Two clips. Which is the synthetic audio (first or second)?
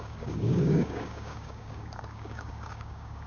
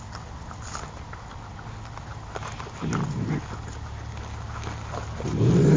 first